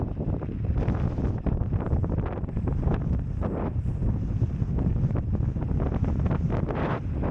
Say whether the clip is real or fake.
real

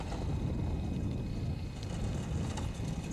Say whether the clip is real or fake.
real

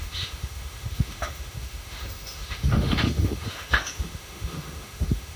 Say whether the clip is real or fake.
fake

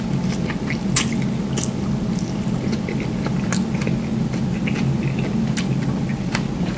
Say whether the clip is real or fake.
real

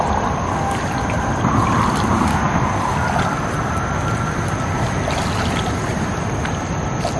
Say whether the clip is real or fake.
real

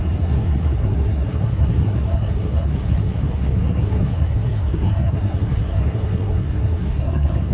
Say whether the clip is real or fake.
fake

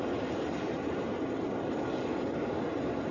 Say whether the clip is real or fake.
real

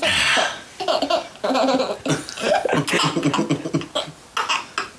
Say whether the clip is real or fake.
real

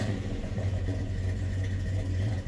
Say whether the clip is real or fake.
fake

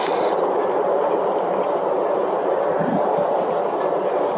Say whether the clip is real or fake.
real